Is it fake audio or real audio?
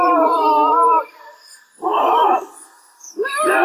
fake